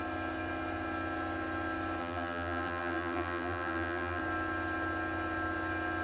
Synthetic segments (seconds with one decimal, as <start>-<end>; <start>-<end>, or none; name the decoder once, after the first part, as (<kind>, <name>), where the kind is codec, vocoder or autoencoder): 2.0-4.2 (vocoder, BigVGAN v2)